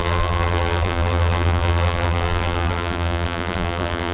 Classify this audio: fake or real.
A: fake